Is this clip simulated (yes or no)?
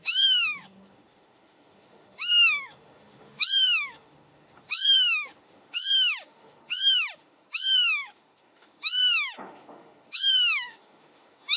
yes